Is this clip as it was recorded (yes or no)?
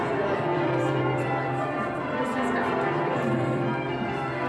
no